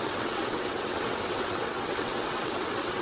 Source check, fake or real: fake